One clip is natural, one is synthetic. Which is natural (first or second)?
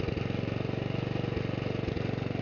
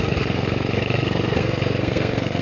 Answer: first